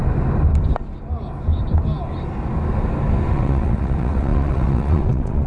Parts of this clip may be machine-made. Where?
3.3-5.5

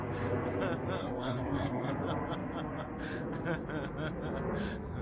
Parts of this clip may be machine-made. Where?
1.0-1.9

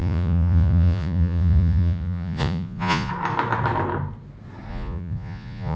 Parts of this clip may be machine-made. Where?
0.0-3.1; 4.7-5.8